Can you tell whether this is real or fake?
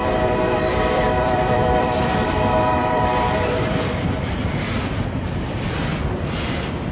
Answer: fake